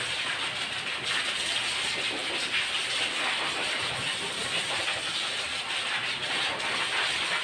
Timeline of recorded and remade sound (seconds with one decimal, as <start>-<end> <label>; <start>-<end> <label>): 0.0-7.4 recorded